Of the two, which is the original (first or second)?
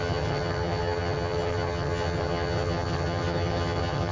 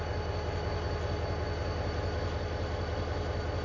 second